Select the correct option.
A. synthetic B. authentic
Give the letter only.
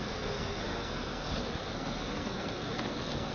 A